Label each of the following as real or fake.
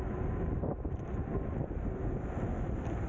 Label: real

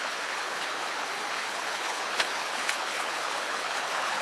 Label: fake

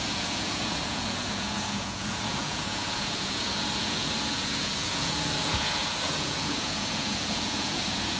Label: fake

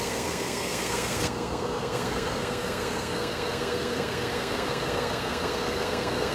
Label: fake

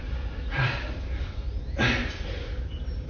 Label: real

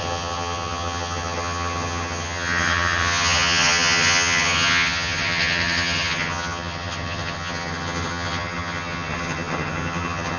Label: fake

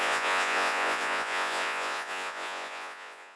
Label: fake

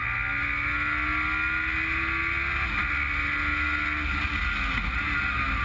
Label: real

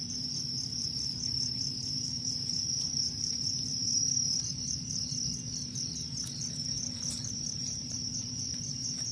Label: fake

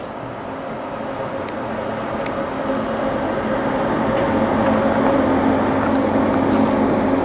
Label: real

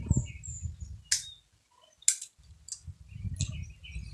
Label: real